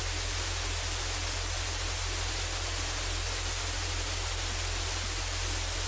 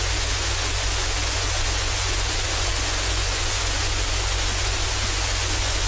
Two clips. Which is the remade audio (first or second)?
second